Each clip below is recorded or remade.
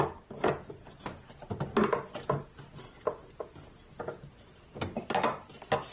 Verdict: recorded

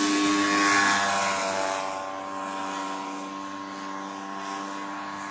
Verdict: recorded